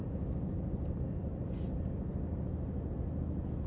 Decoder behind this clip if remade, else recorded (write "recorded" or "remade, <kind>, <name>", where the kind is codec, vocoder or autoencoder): recorded